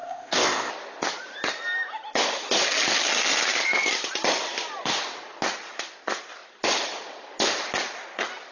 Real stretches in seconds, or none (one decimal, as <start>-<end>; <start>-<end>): 0.7-8.5